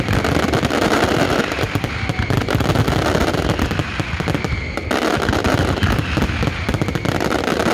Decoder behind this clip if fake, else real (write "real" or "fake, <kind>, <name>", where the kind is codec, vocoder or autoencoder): real